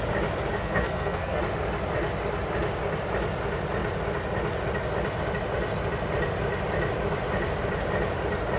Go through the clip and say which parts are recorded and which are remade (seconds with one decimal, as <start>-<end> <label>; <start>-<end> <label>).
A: 0.0-0.5 recorded; 0.5-1.4 remade; 1.4-8.6 recorded